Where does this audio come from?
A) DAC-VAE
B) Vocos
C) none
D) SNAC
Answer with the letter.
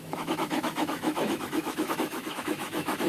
A